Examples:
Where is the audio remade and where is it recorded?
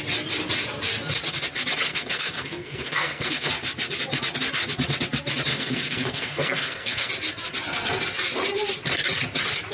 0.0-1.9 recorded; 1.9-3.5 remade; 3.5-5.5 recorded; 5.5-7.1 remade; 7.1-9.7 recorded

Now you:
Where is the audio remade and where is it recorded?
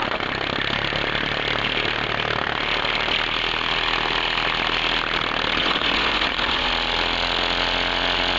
0.0-5.6 recorded; 5.6-6.7 remade; 6.7-8.4 recorded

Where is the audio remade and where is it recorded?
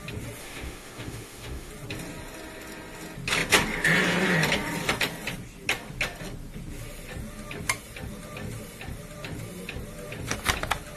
0.0-0.4 recorded; 0.4-1.7 remade; 1.7-11.0 recorded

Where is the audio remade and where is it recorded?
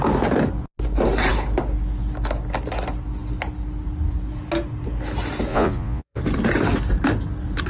0.0-5.5 recorded; 5.5-6.2 remade; 6.2-7.7 recorded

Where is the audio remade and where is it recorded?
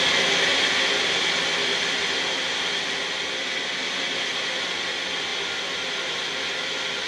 0.0-7.1 recorded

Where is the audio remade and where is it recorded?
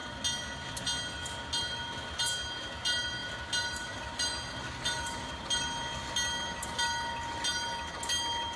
0.0-8.6 recorded